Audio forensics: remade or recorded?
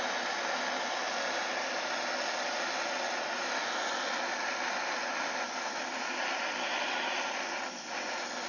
recorded